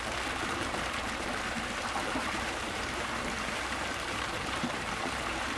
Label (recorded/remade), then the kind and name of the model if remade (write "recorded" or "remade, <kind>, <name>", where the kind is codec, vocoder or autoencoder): remade, vocoder, BigVGAN v2